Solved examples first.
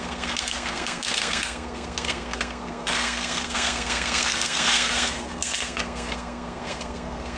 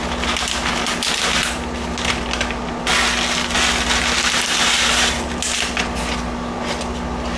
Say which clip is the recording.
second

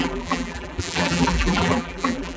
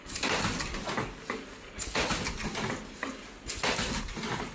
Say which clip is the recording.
second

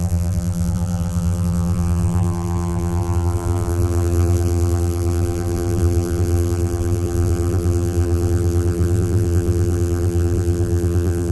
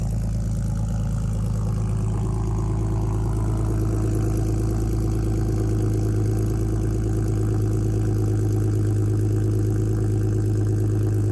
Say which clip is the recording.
second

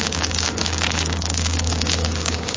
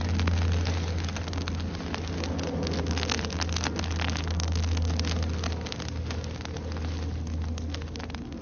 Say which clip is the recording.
second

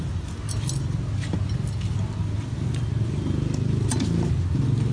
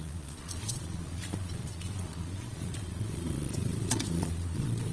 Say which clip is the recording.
first